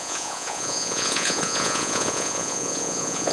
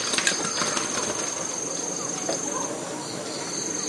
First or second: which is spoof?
first